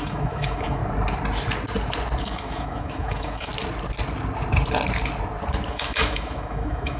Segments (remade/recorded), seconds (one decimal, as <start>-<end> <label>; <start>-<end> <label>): 0.0-0.8 remade; 0.8-2.2 recorded; 2.2-3.5 remade; 3.5-5.7 recorded; 5.7-7.0 remade